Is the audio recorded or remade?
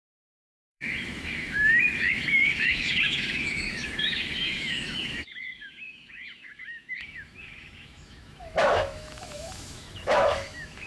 remade